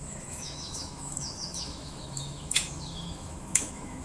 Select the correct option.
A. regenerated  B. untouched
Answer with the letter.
A